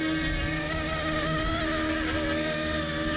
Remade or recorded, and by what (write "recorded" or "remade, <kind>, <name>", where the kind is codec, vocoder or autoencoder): recorded